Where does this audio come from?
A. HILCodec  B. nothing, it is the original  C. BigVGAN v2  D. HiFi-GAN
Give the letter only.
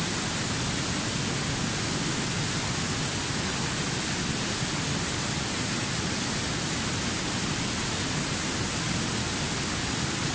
B